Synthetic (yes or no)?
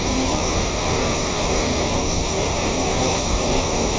yes